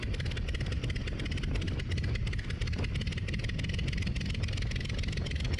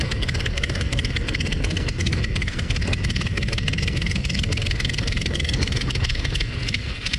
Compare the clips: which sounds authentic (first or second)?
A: first